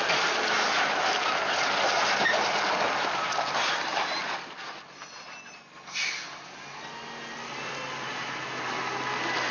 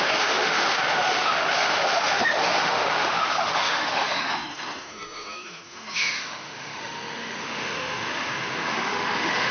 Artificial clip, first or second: second